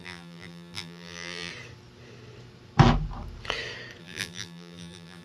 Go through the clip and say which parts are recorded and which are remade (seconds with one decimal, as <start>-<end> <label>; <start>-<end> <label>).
0.0-1.5 remade; 1.5-4.0 recorded; 4.0-5.2 remade